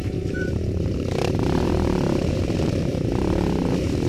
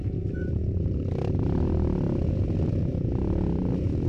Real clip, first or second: second